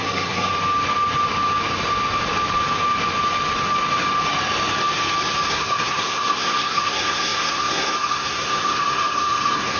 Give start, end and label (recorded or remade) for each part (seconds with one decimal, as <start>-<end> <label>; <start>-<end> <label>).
0.0-0.5 remade; 0.5-5.5 recorded; 5.5-9.8 remade